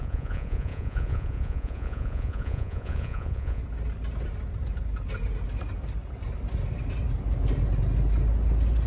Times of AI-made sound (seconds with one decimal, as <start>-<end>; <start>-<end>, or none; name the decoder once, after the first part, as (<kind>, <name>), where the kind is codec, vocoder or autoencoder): 0.0-3.6 (vocoder, Vocos)